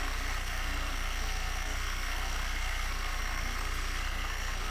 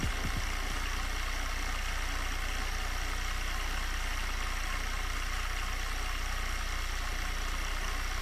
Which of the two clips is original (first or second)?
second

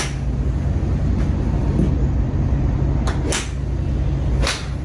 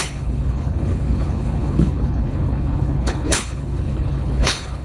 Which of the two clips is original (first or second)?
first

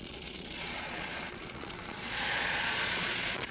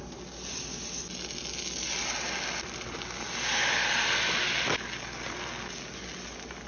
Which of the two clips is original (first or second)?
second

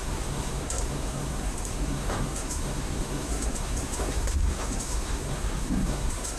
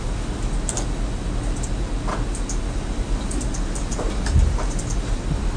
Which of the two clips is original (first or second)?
second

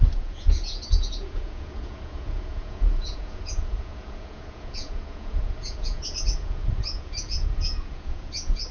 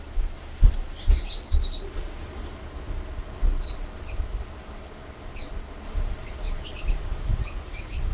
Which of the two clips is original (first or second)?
second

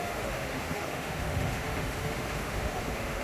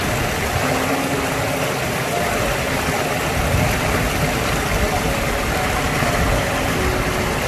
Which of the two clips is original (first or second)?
second